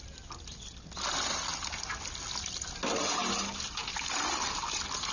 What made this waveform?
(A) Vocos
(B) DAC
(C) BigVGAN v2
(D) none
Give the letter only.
D